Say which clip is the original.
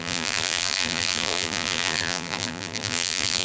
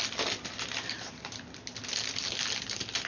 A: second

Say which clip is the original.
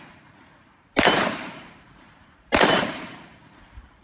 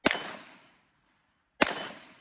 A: second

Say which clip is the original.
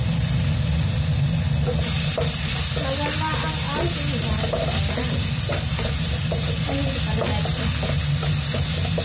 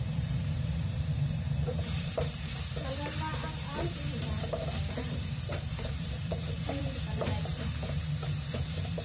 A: first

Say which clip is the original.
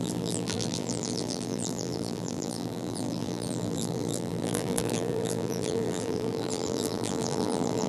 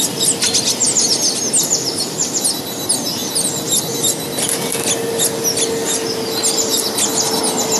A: second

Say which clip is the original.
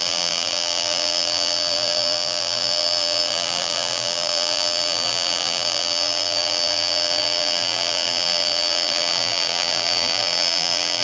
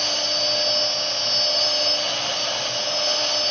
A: second